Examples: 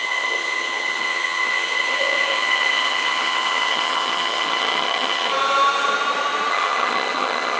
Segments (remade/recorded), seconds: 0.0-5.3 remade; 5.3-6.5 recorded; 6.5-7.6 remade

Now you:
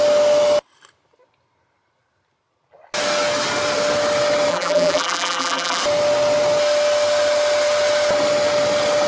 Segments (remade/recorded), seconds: 0.0-4.5 recorded; 4.5-5.8 remade; 5.8-9.1 recorded